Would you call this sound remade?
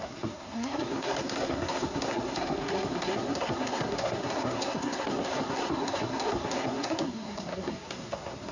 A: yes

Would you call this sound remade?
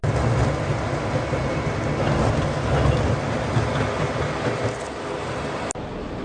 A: no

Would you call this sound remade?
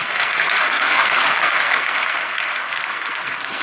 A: yes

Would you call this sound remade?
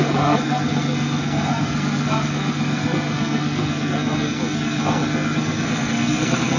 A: yes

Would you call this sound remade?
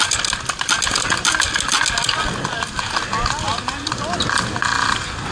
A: no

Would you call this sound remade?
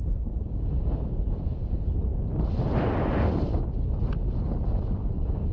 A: no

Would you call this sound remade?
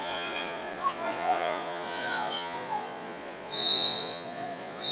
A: yes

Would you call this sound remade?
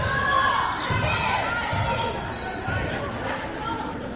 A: no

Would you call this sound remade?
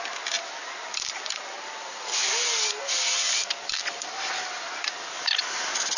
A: no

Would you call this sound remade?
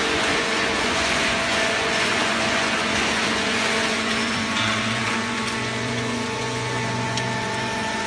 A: yes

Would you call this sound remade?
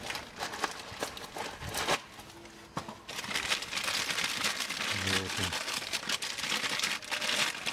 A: no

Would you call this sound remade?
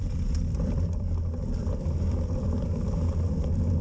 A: no